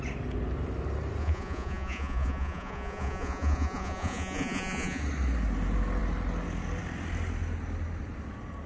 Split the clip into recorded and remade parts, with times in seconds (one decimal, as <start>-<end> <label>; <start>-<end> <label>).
0.0-1.2 recorded; 1.2-5.0 remade; 5.0-8.7 recorded